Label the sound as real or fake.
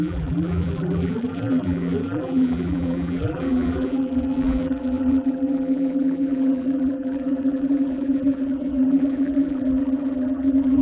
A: fake